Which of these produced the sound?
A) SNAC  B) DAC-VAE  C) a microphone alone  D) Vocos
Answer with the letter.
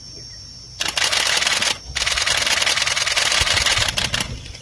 C